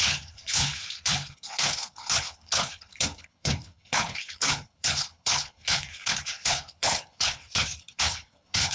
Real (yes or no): no